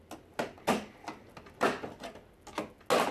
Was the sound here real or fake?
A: real